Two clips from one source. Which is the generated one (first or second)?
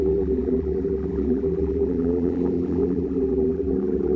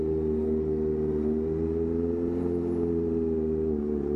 first